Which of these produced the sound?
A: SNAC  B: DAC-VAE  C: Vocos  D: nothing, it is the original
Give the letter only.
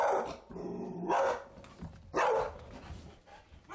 D